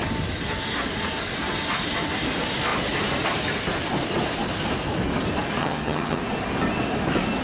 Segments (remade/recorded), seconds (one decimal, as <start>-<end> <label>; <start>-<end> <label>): 0.0-5.6 recorded; 5.6-6.2 remade; 6.2-7.4 recorded